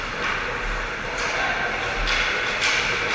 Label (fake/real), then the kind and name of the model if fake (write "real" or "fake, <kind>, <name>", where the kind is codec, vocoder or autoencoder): real